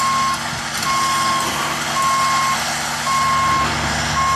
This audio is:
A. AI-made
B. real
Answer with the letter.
B